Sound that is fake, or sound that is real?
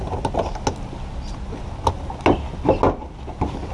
real